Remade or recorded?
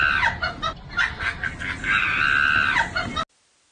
recorded